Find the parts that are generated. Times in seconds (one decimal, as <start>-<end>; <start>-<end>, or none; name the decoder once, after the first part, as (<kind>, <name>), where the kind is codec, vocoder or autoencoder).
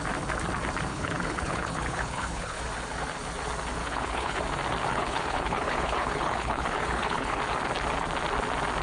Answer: 0.9-2.6 (codec, HILCodec); 3.8-4.4; 4.9-7.4